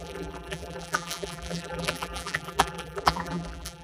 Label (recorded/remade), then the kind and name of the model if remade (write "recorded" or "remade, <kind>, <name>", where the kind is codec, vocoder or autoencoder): remade, vocoder, BigVGAN v2